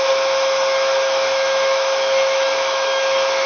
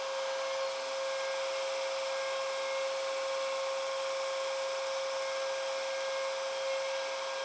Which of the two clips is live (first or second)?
second